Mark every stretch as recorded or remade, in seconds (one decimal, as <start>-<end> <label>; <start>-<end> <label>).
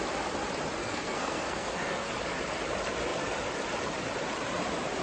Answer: 0.0-0.8 recorded; 0.8-2.1 remade; 2.1-5.0 recorded